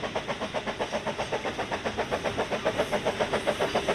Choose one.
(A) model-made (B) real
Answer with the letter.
B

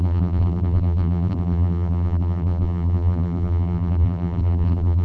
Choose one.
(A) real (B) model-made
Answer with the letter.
B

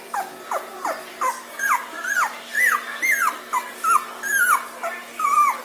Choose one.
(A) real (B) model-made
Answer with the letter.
A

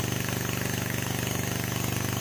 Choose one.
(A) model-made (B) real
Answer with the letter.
B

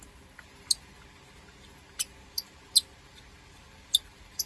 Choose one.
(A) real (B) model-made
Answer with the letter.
A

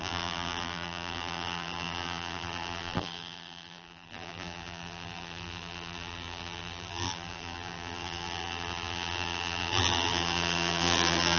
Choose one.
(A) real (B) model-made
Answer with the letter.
B